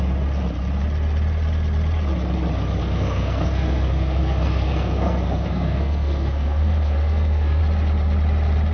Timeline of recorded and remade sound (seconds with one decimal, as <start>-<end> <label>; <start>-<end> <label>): 0.0-2.8 recorded; 2.8-7.6 remade; 7.6-8.7 recorded